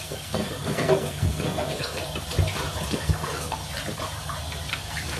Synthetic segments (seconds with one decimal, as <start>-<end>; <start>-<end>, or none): 0.0-2.0; 2.9-3.6; 4.7-5.2